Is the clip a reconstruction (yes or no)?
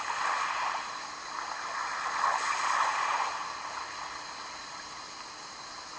no